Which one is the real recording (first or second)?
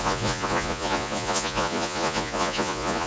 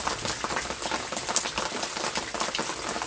second